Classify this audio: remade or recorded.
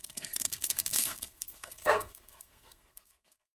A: remade